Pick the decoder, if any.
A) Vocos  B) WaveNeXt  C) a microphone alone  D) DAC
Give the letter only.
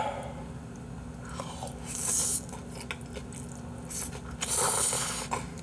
C